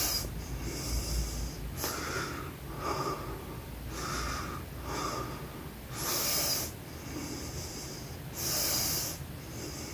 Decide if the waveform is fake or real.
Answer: real